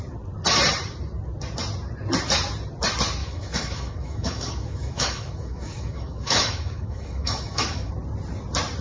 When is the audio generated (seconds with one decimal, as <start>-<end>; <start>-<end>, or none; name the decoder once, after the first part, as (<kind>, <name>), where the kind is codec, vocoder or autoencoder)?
3.2-7.9 (autoencoder, DAC-VAE)